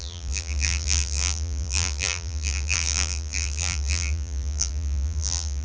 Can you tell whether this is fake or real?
fake